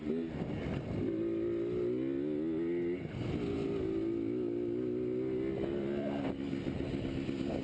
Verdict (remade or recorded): recorded